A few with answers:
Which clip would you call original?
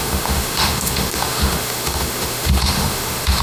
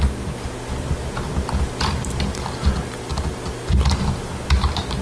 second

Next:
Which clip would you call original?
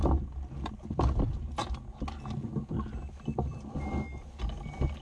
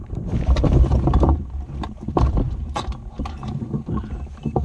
first